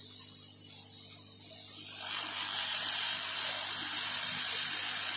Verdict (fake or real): real